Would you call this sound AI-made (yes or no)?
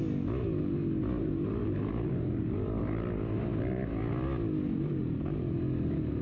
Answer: no